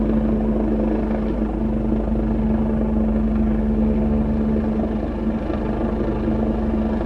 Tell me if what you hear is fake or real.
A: real